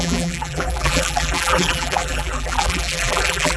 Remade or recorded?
remade